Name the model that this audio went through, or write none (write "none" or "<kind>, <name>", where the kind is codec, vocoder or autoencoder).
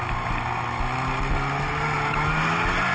none